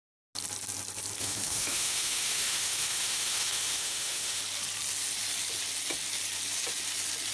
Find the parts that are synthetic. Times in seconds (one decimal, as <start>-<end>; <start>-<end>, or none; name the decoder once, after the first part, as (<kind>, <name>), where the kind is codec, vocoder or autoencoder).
1.2-4.4 (autoencoder, DAC-VAE)